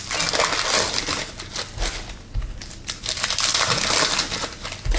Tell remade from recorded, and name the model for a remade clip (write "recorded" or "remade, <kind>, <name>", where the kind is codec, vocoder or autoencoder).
recorded